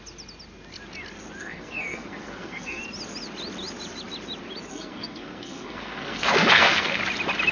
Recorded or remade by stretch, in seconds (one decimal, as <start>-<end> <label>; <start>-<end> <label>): 0.0-1.4 recorded; 1.4-2.8 remade; 2.8-4.7 recorded; 4.7-7.0 remade; 7.0-7.5 recorded